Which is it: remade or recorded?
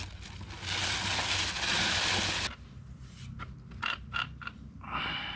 recorded